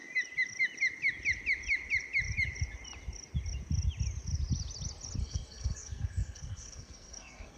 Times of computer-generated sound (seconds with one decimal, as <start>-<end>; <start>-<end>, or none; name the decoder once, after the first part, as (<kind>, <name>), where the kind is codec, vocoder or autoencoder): 5.2-7.6 (codec, SNAC)